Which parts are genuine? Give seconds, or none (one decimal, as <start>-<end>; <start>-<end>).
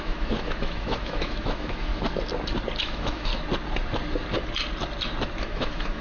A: 1.9-2.8; 3.3-5.4